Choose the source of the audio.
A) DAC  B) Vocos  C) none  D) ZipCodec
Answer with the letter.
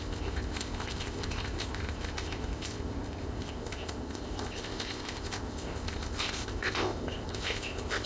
D